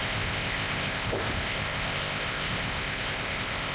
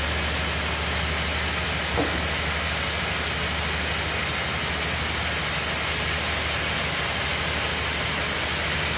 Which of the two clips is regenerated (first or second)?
first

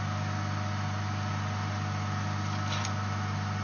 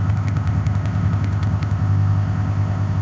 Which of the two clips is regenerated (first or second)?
second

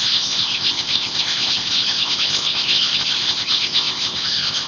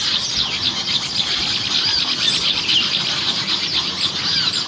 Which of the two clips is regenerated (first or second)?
first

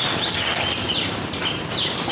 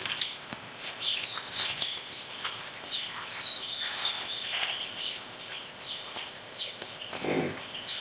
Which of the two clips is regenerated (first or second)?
second